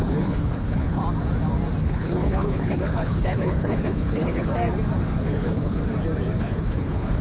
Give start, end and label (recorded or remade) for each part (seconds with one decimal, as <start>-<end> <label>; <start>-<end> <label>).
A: 0.0-1.0 remade; 1.0-1.8 recorded; 1.8-4.5 remade; 4.5-5.2 recorded; 5.2-5.8 remade; 5.8-6.4 recorded; 6.4-7.2 remade